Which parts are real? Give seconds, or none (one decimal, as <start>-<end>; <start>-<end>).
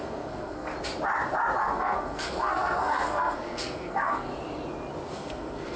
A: 0.7-1.6; 4.3-5.1